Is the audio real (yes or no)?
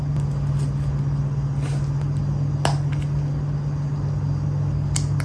yes